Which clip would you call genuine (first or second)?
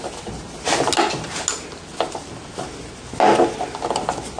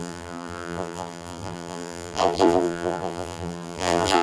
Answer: first